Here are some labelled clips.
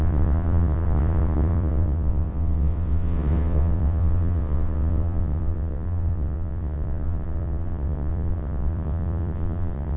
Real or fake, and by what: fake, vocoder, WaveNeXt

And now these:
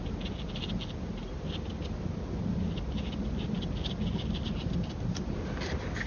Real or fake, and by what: real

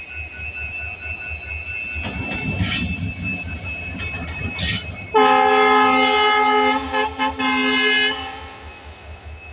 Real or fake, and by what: real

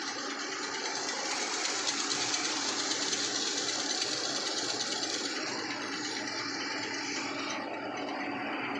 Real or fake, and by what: real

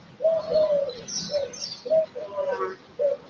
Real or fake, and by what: real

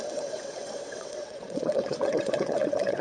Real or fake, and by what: fake, vocoder, WaveNeXt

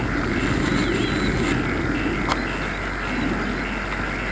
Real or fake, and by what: real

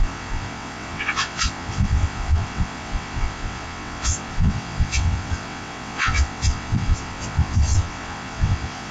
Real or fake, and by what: fake, vocoder, WaveNeXt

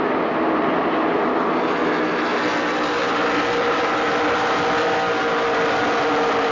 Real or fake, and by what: real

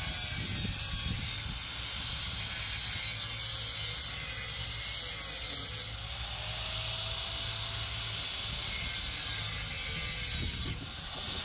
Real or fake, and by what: real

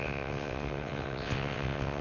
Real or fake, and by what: fake, vocoder, WaveNeXt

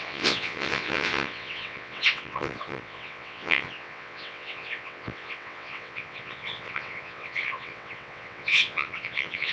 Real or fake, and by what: fake, vocoder, WaveNeXt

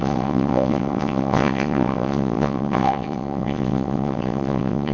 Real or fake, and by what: fake, vocoder, WaveNeXt